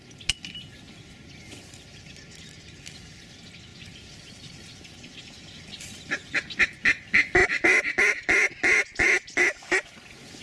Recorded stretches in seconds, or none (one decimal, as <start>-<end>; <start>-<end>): 0.0-10.4